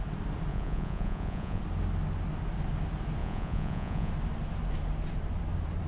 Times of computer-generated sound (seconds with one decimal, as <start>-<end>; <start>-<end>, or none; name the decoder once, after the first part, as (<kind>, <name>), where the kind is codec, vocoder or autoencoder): 0.5-1.6 (vocoder, Vocos); 3.2-4.1